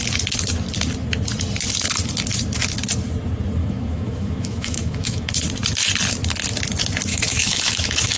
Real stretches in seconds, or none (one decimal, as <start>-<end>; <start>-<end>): 0.0-3.6; 5.3-7.1